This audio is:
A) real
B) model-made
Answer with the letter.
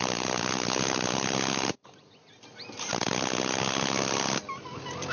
A